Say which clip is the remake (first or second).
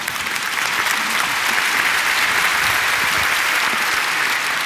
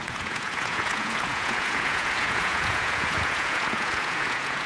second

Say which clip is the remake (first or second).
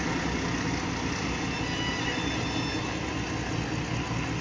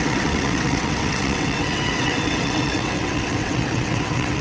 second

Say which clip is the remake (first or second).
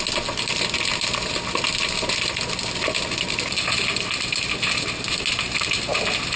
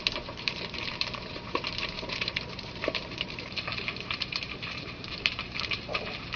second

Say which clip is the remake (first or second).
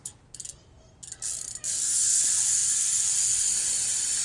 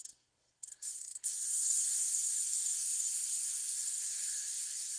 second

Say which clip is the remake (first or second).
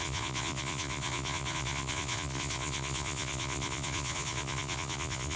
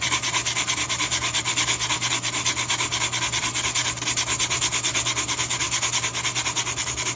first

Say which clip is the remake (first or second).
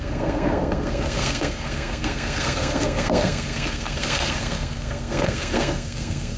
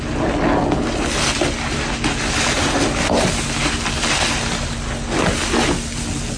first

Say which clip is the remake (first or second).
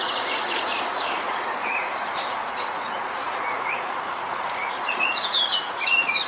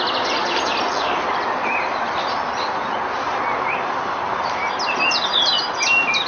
first